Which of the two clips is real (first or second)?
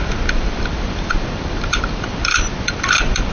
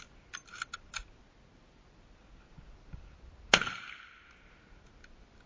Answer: second